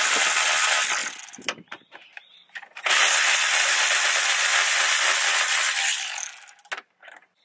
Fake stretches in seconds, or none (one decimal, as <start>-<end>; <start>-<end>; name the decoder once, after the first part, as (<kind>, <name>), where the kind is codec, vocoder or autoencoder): none